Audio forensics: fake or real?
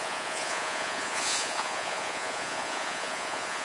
fake